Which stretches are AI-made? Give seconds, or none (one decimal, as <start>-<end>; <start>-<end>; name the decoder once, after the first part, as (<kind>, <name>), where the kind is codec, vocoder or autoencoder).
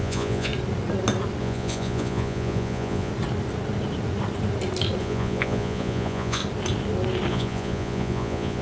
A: 0.0-0.5 (vocoder, Vocos); 1.4-3.1; 5.0-6.4; 7.3-8.6